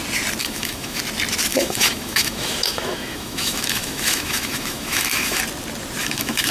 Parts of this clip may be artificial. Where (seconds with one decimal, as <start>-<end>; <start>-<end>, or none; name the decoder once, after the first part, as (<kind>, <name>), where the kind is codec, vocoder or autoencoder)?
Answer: 0.4-1.0 (autoencoder, DAC-VAE); 1.5-5.4; 6.0-6.5